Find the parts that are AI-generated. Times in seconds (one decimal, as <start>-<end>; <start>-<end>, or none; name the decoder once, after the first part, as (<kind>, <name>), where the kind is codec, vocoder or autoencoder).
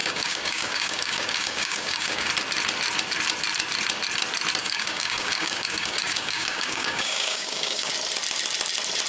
0.0-2.3 (codec, DAC); 4.6-7.9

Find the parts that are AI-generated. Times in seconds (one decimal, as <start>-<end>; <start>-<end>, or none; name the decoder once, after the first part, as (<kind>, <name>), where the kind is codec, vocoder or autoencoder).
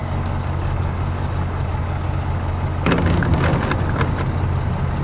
0.0-3.0 (codec, DAC)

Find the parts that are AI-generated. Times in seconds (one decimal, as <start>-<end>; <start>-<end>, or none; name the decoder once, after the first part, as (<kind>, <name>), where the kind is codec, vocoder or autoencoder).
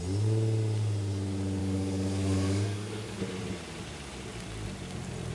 1.6-3.2 (codec, DAC)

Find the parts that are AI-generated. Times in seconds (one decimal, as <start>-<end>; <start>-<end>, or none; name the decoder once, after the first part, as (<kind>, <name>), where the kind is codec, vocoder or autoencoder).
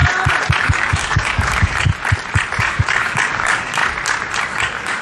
0.6-1.9 (codec, DAC); 2.6-3.8; 4.4-5.0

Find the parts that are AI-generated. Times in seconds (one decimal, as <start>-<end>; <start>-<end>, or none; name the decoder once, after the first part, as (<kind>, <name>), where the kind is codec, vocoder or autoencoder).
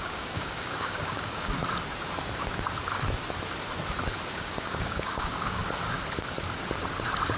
0.0-1.6 (codec, DAC); 4.3-5.6